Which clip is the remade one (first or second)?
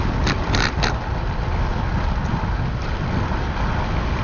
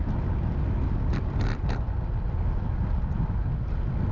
first